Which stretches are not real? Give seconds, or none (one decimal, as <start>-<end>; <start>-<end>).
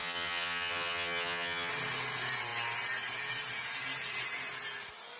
0.0-1.7